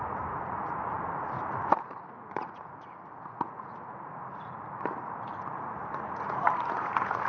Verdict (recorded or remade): remade